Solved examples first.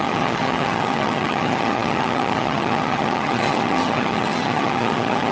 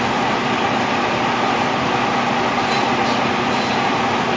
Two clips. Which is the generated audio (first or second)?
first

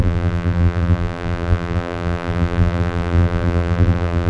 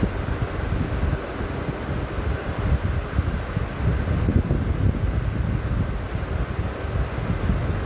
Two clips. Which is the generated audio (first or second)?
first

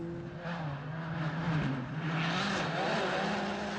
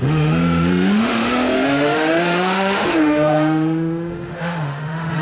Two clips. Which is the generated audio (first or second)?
second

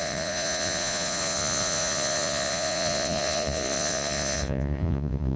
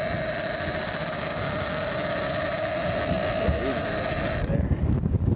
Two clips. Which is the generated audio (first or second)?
first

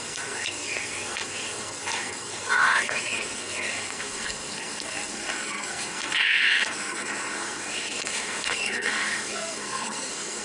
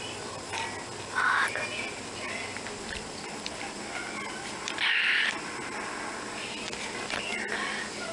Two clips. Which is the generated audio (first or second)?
first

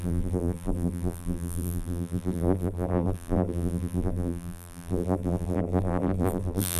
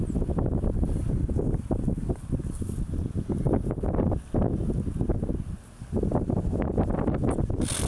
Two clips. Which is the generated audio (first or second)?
first